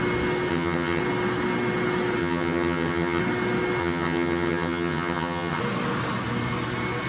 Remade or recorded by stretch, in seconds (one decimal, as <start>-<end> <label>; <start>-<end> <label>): 0.0-0.5 recorded; 0.5-1.0 remade; 1.0-2.2 recorded; 2.2-3.2 remade; 3.2-3.8 recorded; 3.8-5.6 remade; 5.6-7.1 recorded